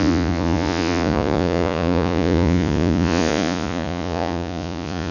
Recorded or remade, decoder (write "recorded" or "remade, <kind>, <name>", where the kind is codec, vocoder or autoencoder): remade, vocoder, Vocos